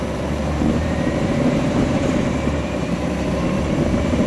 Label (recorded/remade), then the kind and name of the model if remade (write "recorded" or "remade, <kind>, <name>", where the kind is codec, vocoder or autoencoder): remade, vocoder, BigVGAN v2